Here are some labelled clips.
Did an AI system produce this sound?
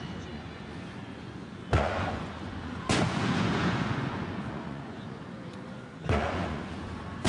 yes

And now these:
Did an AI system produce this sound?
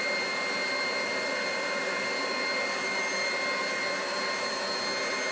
no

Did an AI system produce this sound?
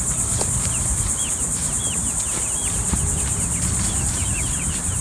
no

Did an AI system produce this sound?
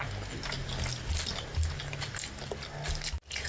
no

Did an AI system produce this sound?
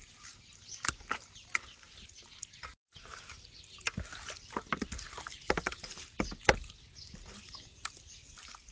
no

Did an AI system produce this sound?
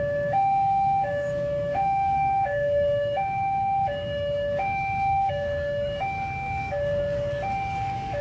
yes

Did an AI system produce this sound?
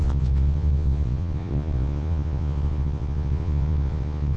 yes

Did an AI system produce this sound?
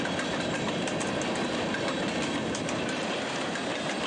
no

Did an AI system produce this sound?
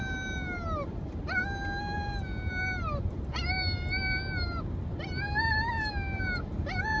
no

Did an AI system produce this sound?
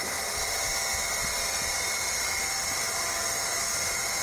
no